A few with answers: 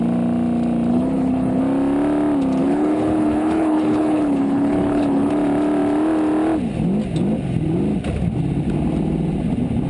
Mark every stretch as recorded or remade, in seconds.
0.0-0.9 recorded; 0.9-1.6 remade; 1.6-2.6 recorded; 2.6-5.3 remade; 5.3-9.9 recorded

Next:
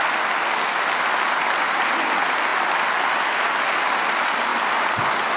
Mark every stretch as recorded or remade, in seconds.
0.0-5.4 recorded

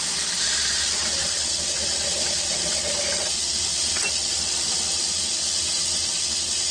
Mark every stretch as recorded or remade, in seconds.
0.0-6.7 recorded